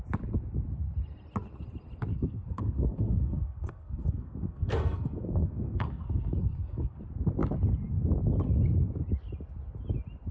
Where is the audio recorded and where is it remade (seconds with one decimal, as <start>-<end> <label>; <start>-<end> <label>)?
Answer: 0.0-2.1 recorded; 2.1-7.0 remade; 7.0-10.3 recorded